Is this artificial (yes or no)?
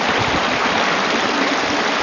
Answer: no